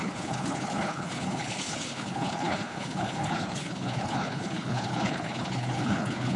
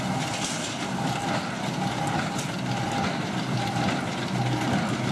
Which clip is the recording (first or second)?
second